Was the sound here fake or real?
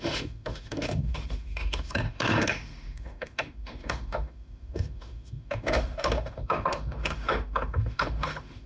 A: fake